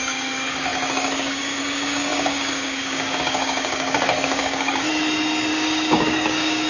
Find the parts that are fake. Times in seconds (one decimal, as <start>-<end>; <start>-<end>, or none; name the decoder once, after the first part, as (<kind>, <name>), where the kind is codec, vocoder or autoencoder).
0.0-4.9 (codec, DAC); 5.5-6.7